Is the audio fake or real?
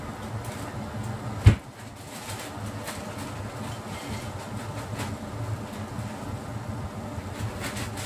real